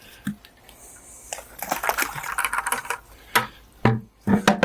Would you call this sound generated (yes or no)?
no